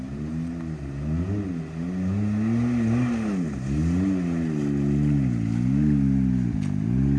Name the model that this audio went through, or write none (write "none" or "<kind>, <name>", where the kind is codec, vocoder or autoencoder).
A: none